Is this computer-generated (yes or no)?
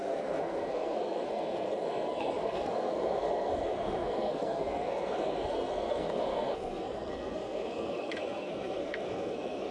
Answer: yes